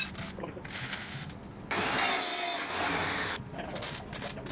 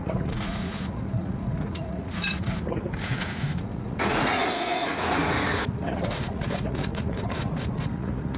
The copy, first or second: second